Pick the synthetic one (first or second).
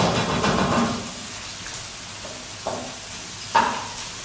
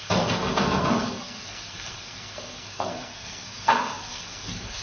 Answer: second